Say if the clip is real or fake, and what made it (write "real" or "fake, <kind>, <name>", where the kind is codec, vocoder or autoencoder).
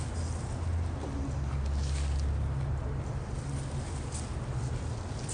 real